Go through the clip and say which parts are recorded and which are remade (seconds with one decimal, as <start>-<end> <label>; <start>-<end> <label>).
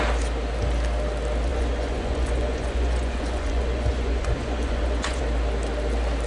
0.0-1.5 recorded; 1.5-5.2 remade; 5.2-6.3 recorded